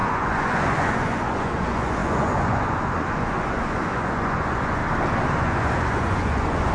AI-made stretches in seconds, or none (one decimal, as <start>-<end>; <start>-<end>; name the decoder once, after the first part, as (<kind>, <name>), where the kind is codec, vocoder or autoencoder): 0.0-4.8 (vocoder, Vocos); 5.4-6.7